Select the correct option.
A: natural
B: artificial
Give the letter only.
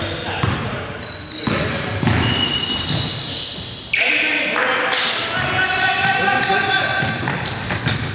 A